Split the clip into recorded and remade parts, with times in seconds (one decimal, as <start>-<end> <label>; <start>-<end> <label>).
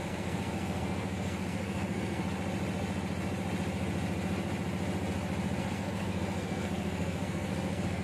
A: 0.0-2.2 remade; 2.2-5.6 recorded; 5.6-8.0 remade